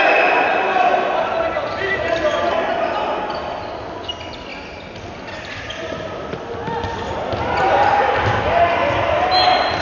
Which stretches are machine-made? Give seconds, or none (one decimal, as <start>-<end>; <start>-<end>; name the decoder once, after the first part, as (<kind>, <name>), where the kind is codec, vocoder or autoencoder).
none